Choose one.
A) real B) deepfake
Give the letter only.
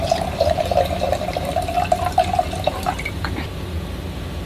A